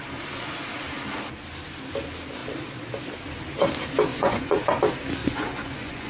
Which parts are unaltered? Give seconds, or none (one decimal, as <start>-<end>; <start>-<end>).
0.0-4.1; 4.7-5.2